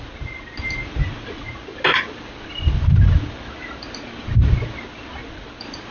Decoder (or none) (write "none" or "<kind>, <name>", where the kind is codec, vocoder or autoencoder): none